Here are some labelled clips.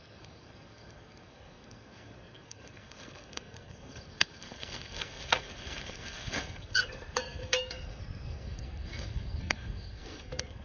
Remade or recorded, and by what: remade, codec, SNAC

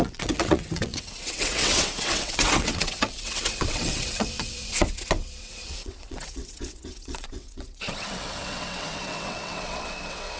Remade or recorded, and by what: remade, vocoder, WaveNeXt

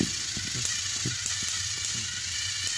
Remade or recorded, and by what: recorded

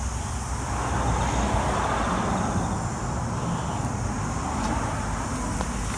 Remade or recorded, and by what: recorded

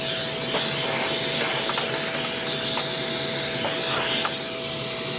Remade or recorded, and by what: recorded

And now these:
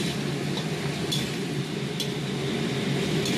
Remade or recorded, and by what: recorded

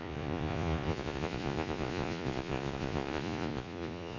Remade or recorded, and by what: remade, vocoder, Vocos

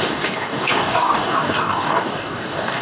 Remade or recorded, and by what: remade, codec, DAC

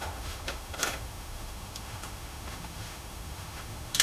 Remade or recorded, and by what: remade, autoencoder, DAC-VAE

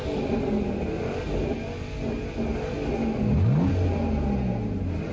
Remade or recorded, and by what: recorded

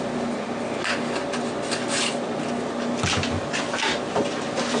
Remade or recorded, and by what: recorded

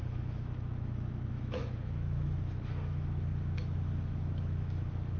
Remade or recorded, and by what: remade, autoencoder, DAC-VAE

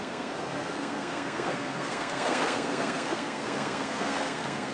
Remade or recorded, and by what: remade, codec, SNAC